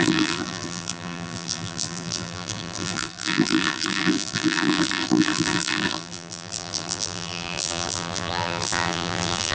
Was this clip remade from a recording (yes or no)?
yes